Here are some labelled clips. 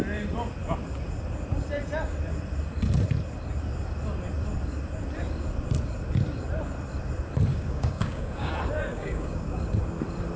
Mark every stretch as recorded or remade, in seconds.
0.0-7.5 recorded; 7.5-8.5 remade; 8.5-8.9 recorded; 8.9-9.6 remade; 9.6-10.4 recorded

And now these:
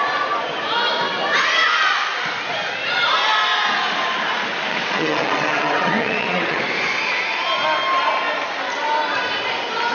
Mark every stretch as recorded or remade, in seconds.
0.0-4.7 recorded; 4.7-6.6 remade; 6.6-9.9 recorded

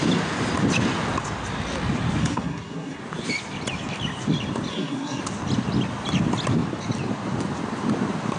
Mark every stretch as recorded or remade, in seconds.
0.0-2.2 recorded; 2.2-3.0 remade; 3.0-4.7 recorded; 4.7-5.2 remade; 5.2-8.4 recorded